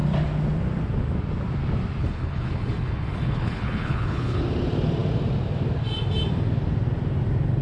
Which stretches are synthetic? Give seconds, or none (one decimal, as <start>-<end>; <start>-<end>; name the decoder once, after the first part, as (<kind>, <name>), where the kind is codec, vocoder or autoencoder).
2.0-4.4 (codec, HILCodec)